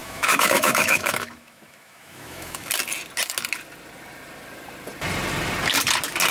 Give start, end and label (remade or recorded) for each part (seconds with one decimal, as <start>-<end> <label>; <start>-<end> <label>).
0.0-2.7 remade; 2.7-6.3 recorded